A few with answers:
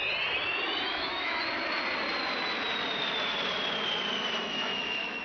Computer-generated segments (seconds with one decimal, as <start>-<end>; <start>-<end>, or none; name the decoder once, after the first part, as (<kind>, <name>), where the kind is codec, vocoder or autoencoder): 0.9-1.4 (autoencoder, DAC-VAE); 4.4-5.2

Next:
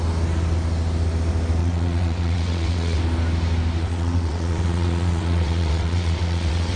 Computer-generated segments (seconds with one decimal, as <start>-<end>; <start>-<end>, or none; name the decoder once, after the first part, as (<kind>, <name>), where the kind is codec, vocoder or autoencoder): 1.6-3.0 (vocoder, WaveNeXt); 3.8-6.8

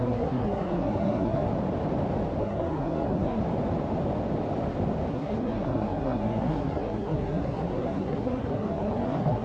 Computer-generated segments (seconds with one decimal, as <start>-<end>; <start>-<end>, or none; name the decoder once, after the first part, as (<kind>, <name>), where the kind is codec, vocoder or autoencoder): 0.0-1.5 (codec, SNAC); 2.4-3.4; 5.1-9.4

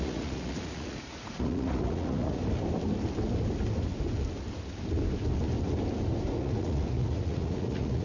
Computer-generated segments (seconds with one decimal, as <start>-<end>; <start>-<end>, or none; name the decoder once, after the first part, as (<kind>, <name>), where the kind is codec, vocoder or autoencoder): 0.0-2.4 (vocoder, Vocos); 6.4-8.0

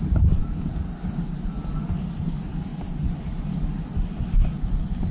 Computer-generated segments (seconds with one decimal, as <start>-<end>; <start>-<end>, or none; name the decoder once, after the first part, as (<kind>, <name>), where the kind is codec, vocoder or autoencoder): none